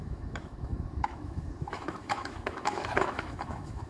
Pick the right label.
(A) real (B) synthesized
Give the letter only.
B